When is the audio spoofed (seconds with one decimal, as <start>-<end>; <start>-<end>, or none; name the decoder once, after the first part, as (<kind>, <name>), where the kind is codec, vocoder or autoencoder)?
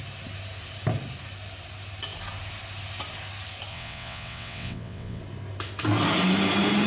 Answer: 3.7-5.2 (vocoder, WaveNeXt)